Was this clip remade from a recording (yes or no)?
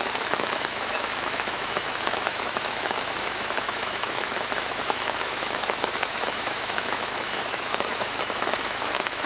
yes